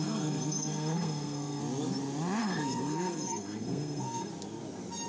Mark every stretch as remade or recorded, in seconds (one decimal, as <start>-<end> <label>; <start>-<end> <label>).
0.0-1.6 remade; 1.6-2.4 recorded; 2.4-4.3 remade; 4.3-5.1 recorded